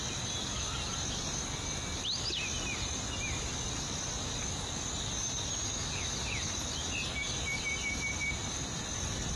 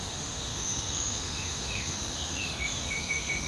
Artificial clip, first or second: second